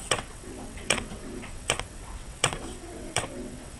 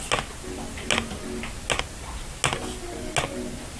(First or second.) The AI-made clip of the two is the first